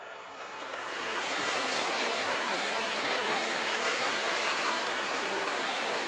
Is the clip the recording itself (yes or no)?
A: no